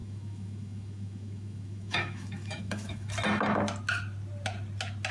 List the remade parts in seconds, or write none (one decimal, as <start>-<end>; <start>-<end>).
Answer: 0.0-3.1